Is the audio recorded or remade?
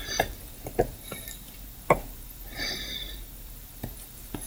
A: remade